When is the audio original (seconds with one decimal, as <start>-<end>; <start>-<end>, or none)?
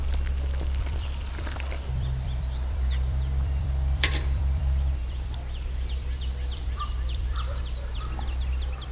0.0-0.8; 4.6-5.0; 7.6-8.9